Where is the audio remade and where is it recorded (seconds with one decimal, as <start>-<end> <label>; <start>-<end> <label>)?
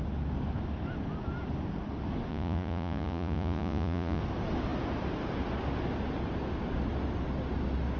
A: 0.0-2.3 recorded; 2.3-4.2 remade; 4.2-8.0 recorded